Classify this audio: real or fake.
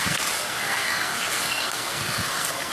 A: fake